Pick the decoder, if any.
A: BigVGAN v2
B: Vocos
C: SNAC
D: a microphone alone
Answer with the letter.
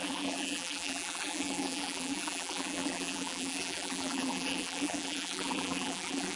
A